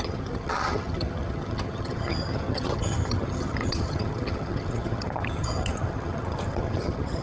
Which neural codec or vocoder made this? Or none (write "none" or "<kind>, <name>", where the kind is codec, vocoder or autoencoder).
vocoder, HiFi-GAN